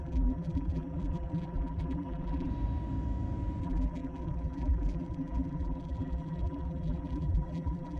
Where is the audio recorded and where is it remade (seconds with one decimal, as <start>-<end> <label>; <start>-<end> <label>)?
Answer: 0.0-2.5 remade; 2.5-3.6 recorded; 3.6-8.0 remade